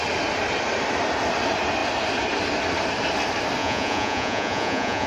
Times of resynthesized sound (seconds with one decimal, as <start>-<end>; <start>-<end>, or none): 3.6-5.1